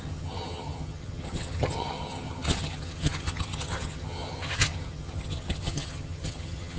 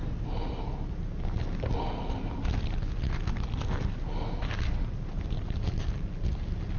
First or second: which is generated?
first